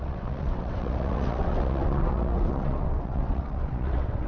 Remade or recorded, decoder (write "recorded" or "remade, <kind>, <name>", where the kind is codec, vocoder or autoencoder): remade, vocoder, WaveNeXt